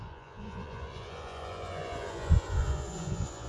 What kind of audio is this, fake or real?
fake